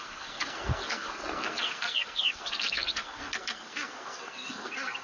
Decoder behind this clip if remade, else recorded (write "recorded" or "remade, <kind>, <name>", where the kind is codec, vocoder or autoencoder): remade, codec, SNAC